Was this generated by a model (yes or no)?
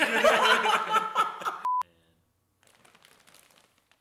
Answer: no